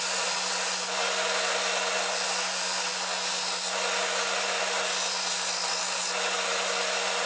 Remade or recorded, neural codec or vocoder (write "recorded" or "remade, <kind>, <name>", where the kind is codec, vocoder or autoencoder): recorded